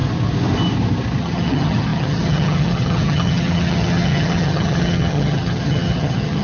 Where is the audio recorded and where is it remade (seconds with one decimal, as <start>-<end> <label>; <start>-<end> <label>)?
0.0-1.2 recorded; 1.2-6.4 remade